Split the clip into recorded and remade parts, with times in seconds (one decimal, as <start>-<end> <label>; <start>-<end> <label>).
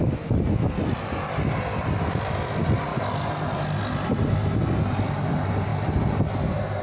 0.0-6.8 recorded